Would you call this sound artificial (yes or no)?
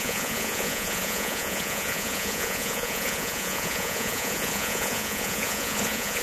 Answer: yes